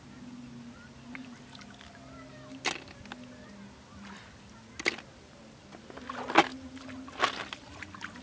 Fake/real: real